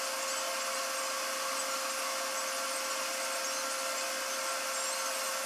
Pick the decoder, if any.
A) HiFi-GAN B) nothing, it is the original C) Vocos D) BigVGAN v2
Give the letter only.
B